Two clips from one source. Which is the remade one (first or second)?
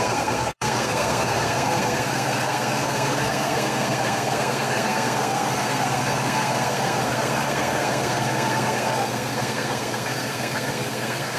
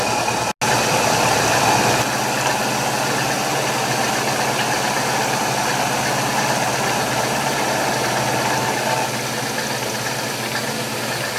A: first